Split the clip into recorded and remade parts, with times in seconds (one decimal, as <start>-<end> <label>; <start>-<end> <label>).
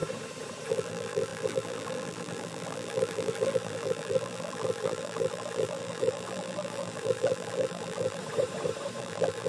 0.0-0.7 recorded; 0.7-8.2 remade; 8.2-9.0 recorded; 9.0-9.5 remade